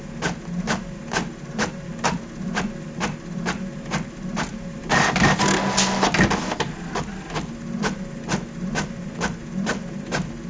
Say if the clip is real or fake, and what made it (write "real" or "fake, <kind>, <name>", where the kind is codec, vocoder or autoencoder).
real